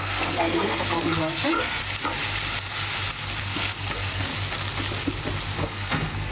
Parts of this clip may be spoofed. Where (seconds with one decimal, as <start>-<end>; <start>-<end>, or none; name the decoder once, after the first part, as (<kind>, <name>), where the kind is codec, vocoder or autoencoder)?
0.0-1.8 (codec, SNAC); 3.4-4.3; 5.6-6.3